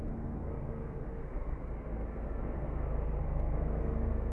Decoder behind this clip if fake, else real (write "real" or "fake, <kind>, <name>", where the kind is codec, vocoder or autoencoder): fake, codec, SNAC